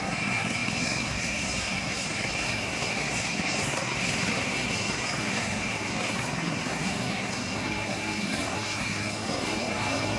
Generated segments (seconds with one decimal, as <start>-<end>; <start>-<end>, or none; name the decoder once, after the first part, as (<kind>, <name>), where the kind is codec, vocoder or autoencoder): 0.0-10.2 (codec, SNAC)

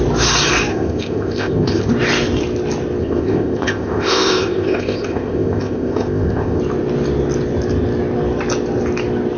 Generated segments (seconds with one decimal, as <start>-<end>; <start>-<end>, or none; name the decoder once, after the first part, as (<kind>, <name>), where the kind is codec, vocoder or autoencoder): 0.7-1.9 (codec, ZipCodec); 3.0-6.6

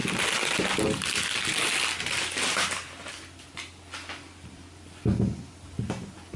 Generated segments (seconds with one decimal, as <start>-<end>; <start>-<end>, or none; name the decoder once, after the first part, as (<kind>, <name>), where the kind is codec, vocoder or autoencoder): none

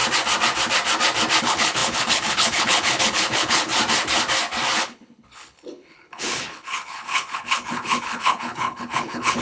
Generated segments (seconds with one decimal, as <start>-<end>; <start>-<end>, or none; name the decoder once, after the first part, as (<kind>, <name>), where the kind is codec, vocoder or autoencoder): 1.4-3.7 (codec, HILCodec); 4.8-9.4

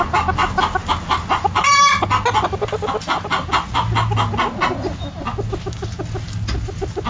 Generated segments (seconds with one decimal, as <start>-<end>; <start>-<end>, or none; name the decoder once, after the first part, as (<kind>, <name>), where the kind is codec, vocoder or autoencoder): none

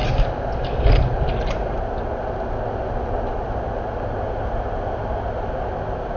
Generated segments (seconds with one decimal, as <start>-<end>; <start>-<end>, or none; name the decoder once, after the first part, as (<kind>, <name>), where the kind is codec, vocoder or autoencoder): none

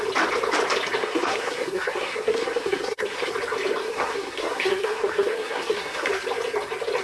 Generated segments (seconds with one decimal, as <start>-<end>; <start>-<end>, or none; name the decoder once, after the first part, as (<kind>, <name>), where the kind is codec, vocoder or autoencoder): 1.0-3.3 (codec, SNAC); 3.8-6.1

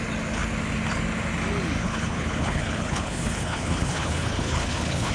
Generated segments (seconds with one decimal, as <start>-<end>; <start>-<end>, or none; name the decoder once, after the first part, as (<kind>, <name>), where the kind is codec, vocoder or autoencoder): 1.8-5.1 (codec, HILCodec)